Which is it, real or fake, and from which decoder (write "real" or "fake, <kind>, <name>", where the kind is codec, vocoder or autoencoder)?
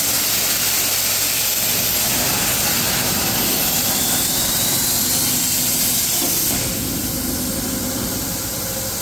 fake, vocoder, BigVGAN v2